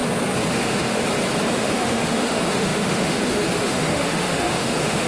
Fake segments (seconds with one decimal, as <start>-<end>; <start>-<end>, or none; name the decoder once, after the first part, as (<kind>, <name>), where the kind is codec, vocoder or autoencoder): 0.5-1.0 (autoencoder, DAC-VAE); 1.5-5.1